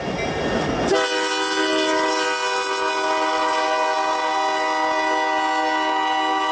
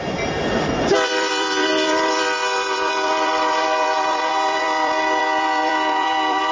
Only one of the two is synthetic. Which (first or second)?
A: second